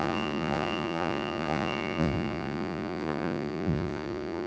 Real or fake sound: fake